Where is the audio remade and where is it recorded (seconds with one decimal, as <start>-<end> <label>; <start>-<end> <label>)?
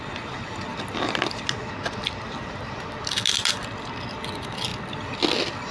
0.0-5.7 recorded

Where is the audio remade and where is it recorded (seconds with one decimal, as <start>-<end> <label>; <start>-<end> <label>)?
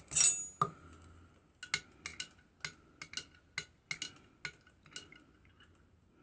0.0-6.2 recorded